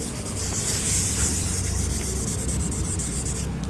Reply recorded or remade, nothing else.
recorded